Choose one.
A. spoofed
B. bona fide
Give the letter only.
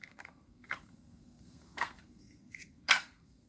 A